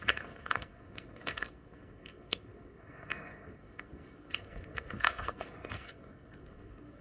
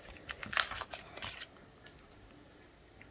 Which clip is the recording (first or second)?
second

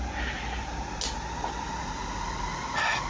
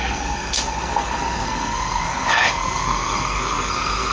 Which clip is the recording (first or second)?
first